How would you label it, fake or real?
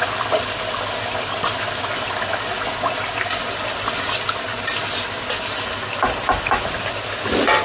real